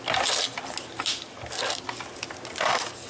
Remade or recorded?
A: recorded